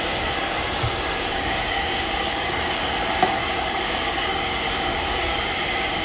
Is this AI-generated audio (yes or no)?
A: yes